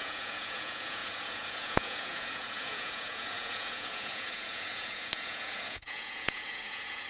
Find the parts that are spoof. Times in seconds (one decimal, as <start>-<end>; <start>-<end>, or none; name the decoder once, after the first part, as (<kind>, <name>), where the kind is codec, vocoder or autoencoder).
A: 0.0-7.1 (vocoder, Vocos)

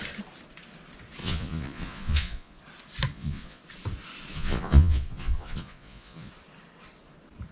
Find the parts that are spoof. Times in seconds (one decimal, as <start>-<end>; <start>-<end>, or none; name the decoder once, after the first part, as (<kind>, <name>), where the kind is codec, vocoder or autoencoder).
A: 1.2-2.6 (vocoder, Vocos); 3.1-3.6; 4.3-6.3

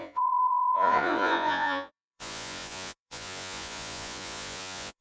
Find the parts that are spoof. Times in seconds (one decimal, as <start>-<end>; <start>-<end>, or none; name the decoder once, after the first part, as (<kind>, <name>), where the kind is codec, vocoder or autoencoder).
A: 0.0-5.0 (vocoder, Vocos)

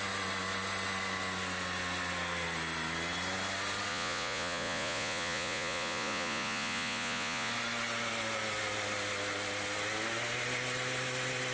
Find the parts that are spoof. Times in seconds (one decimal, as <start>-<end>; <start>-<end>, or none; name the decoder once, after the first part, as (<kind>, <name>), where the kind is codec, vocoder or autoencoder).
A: 3.9-7.5 (vocoder, Vocos)

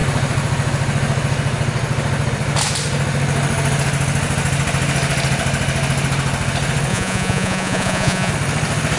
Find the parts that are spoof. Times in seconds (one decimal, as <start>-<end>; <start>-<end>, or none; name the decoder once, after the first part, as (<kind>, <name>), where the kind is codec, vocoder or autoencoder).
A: 6.9-8.3 (vocoder, Vocos)

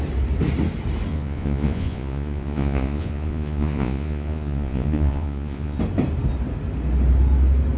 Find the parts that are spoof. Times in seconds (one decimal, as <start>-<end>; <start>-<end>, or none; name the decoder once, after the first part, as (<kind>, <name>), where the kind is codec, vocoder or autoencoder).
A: 1.1-5.8 (vocoder, Vocos)